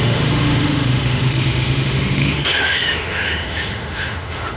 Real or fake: fake